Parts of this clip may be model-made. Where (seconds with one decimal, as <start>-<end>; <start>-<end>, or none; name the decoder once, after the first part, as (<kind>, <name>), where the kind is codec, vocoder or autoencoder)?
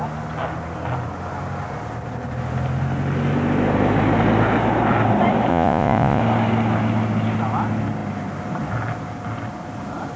5.5-6.2 (vocoder, Vocos)